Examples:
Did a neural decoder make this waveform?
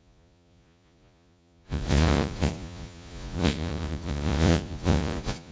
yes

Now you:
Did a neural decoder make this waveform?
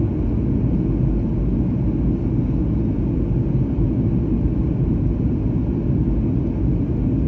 no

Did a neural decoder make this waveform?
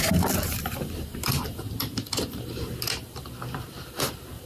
yes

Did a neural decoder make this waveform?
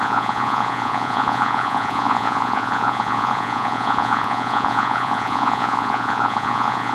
yes